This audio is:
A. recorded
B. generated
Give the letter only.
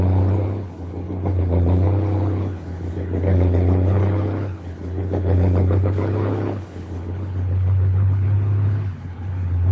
B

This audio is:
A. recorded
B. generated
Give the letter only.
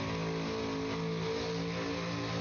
A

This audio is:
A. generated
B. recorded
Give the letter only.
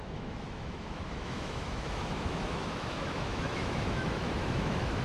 A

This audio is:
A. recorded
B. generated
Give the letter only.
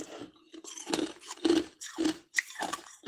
B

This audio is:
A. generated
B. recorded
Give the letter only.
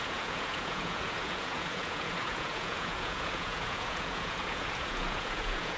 A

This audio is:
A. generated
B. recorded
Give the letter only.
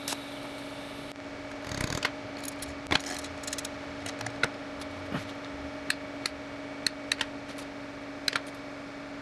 B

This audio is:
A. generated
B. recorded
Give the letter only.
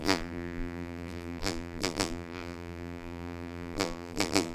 A